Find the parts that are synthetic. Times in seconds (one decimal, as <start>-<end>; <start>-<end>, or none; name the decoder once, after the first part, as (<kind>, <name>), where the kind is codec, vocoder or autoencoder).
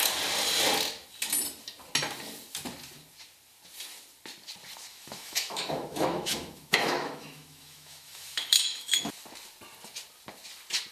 4.9-9.1 (autoencoder, DAC-VAE)